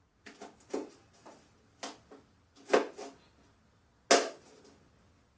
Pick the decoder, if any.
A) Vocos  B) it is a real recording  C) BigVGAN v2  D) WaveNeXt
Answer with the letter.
B